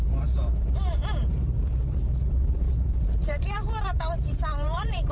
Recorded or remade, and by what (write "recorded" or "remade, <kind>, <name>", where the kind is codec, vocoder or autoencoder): remade, vocoder, BigVGAN v2